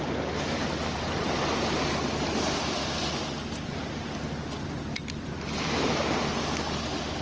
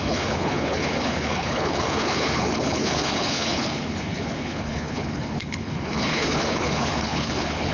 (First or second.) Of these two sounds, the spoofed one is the second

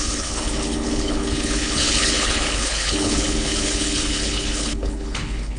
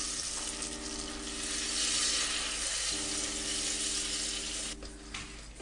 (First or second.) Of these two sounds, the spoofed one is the first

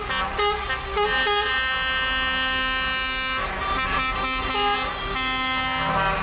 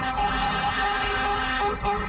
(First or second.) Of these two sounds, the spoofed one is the second